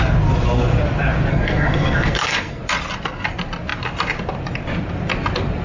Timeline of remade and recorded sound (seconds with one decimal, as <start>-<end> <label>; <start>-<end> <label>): 0.0-1.3 recorded; 1.3-2.6 remade; 2.6-5.6 recorded